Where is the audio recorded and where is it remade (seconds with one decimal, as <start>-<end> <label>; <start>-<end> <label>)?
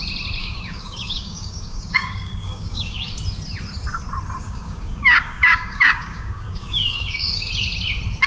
0.0-0.4 recorded; 0.4-3.1 remade; 3.1-4.4 recorded; 4.4-7.5 remade; 7.5-8.3 recorded